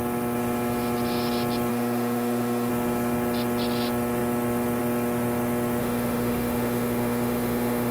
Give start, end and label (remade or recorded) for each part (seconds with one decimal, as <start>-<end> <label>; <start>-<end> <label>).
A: 0.0-1.7 recorded; 1.7-2.7 remade; 2.7-5.8 recorded; 5.8-7.9 remade